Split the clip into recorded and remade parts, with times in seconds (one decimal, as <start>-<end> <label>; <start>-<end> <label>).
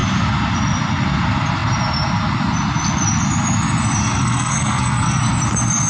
0.0-4.0 recorded; 4.0-5.2 remade; 5.2-5.9 recorded